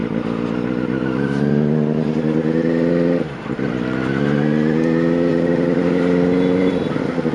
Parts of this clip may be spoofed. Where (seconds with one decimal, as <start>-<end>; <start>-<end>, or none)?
none